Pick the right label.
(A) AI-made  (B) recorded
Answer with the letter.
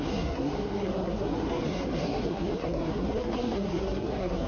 A